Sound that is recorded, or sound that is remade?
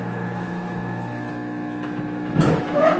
remade